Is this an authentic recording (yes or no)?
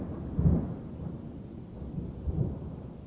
yes